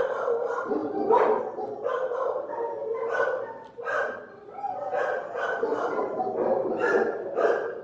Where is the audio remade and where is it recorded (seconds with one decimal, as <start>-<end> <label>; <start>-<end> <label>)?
0.0-7.8 recorded